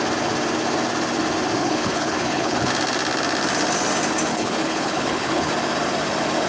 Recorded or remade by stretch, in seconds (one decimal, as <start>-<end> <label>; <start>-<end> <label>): 0.0-1.6 recorded; 1.6-2.7 remade; 2.7-4.3 recorded; 4.3-5.5 remade; 5.5-6.5 recorded